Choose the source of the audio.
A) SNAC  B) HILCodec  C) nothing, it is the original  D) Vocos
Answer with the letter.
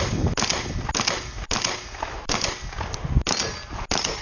C